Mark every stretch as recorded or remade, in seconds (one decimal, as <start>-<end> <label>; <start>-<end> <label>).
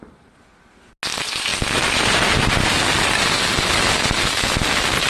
0.0-5.1 recorded